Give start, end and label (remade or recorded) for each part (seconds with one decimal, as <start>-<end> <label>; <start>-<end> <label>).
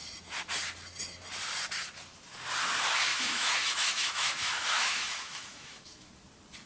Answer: 0.0-3.1 recorded; 3.1-6.1 remade; 6.1-6.7 recorded